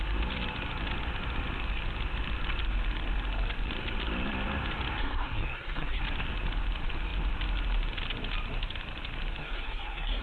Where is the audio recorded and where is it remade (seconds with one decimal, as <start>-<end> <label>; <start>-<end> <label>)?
0.0-5.0 recorded; 5.0-6.0 remade; 6.0-9.4 recorded; 9.4-10.2 remade